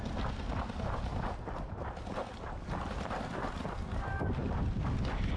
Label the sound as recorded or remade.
recorded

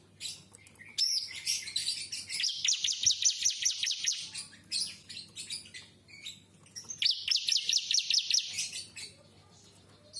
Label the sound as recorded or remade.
recorded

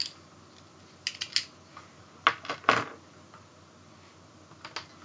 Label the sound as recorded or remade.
recorded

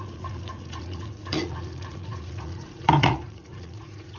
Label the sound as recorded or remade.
remade